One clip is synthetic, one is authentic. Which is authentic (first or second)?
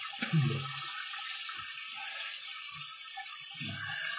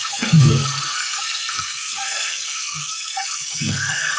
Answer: first